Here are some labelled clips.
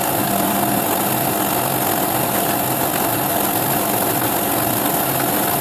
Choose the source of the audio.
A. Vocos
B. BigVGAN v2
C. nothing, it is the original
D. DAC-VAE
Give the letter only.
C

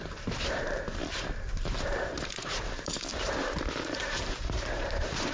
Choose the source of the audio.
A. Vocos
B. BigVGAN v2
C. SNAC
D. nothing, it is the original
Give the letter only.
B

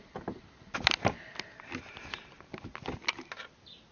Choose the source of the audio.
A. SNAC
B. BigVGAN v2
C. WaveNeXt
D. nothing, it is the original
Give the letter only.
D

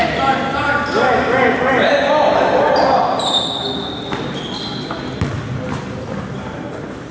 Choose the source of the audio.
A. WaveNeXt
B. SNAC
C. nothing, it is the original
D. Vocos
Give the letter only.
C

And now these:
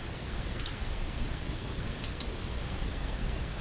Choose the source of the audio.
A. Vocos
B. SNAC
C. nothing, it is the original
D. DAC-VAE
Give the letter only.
B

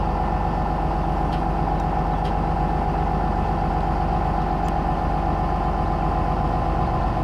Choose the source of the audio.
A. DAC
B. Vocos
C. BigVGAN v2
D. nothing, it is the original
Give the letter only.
D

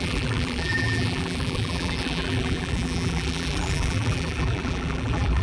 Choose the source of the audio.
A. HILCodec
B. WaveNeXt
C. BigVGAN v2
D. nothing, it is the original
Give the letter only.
C